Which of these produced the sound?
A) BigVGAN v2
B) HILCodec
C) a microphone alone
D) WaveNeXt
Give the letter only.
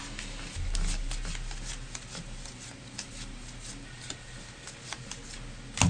C